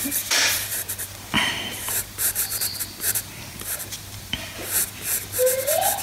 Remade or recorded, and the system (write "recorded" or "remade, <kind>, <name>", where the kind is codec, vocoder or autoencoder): remade, vocoder, BigVGAN v2